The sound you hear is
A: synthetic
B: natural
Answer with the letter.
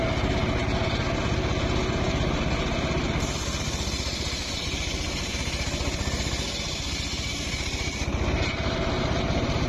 B